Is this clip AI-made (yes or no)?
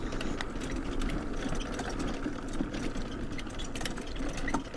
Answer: no